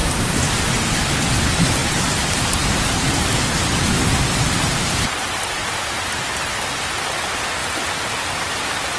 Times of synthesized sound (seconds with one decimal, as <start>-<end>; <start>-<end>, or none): 0.0-1.1; 1.8-6.5